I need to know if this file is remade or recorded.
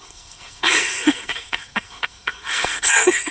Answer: remade